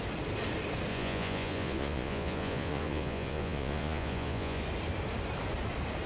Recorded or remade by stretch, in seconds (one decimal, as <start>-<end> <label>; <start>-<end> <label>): 0.0-0.9 recorded; 0.9-4.6 remade; 4.6-6.1 recorded

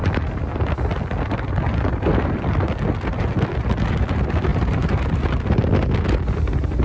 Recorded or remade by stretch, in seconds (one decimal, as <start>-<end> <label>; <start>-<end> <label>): 0.0-4.5 recorded; 4.5-5.4 remade; 5.4-6.8 recorded

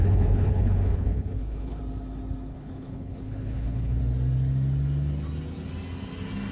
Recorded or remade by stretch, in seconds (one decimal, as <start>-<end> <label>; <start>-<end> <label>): 0.0-1.8 remade; 1.8-2.5 recorded; 2.5-4.0 remade; 4.0-6.5 recorded